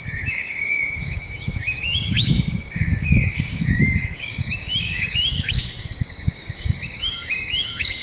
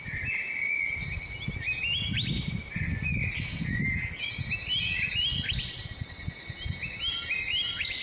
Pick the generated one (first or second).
first